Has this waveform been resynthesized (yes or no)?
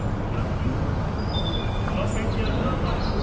no